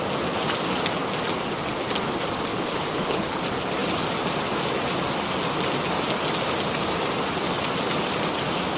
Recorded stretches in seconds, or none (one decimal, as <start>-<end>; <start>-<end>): 0.0-2.5; 3.4-8.8